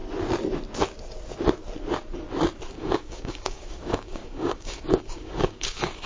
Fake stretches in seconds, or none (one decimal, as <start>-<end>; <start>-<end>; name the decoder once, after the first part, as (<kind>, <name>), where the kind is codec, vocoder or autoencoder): 2.7-6.1 (codec, DAC)